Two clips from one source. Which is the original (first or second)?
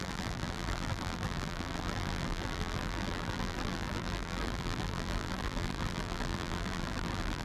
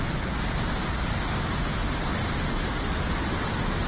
second